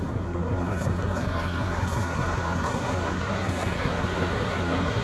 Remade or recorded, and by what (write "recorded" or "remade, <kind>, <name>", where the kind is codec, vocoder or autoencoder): remade, codec, SNAC